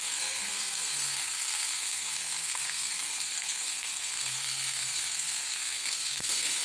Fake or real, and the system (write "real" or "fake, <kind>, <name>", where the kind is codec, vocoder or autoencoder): fake, codec, SNAC